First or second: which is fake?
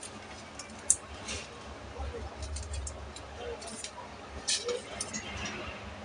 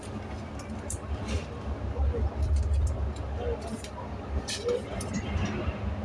second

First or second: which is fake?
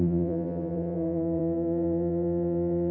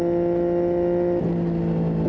first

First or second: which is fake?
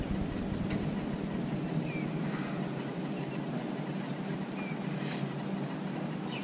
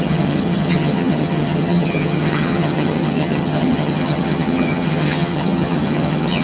second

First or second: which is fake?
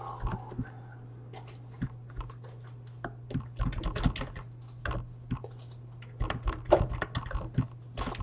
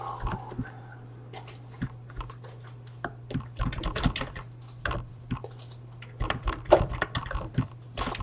second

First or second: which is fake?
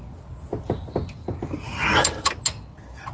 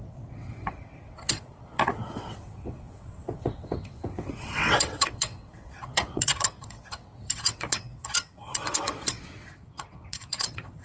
second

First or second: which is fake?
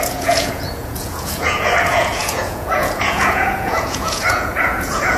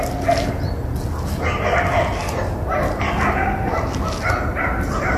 first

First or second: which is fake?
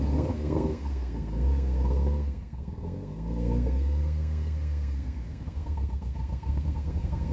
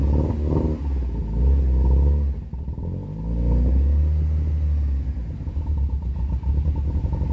first